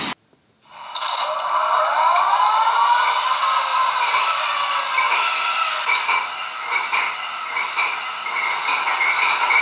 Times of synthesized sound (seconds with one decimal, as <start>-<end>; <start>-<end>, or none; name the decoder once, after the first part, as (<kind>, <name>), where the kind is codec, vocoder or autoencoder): 3.7-4.3 (vocoder, BigVGAN v2)